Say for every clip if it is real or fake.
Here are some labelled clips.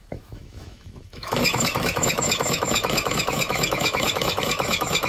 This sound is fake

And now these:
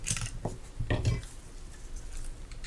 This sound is real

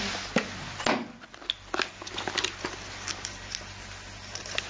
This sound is real